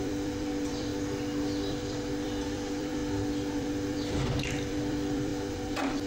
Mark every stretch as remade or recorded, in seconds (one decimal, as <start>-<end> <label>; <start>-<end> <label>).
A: 0.0-0.9 remade; 0.9-1.4 recorded; 1.4-3.0 remade; 3.0-3.6 recorded; 3.6-6.1 remade